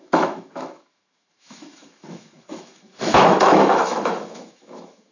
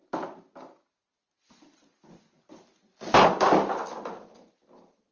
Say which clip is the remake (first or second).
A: first